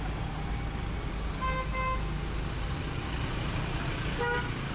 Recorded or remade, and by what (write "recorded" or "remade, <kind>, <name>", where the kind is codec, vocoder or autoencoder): recorded